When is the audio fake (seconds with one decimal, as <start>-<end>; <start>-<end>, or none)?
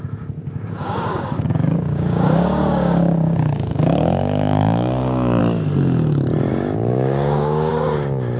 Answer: 0.4-5.4; 6.5-7.7